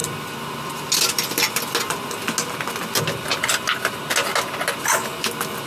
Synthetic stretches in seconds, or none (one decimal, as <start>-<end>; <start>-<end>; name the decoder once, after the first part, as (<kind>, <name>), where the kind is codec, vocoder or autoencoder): none